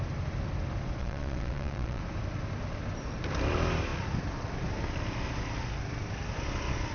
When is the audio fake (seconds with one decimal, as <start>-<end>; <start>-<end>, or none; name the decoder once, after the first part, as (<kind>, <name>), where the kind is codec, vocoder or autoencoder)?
1.0-2.0 (vocoder, Vocos)